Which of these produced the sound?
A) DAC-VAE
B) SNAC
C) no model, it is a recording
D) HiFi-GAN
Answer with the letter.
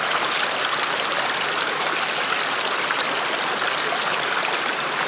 C